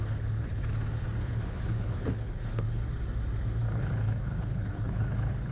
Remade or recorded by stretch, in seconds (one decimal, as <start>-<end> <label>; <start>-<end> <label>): 0.0-0.6 remade; 0.6-1.2 recorded; 1.2-2.8 remade; 2.8-3.7 recorded; 3.7-5.5 remade